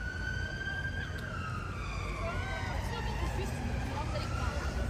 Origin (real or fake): real